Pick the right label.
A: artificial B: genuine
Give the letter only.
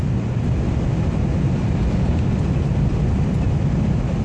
B